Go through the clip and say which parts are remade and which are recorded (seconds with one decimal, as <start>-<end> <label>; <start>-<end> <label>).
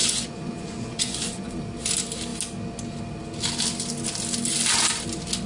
0.0-1.6 remade; 1.6-5.5 recorded